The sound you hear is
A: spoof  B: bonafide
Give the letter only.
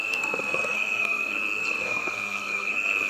A